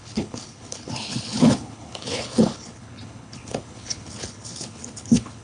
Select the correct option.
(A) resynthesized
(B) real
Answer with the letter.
A